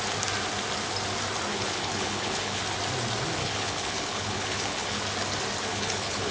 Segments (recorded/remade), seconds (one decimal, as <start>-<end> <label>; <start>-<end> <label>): 0.0-1.5 recorded; 1.5-2.6 remade; 2.6-3.4 recorded; 3.4-5.0 remade; 5.0-5.7 recorded; 5.7-6.3 remade